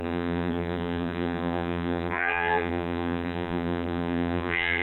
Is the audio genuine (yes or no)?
no